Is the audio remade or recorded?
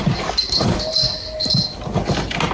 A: recorded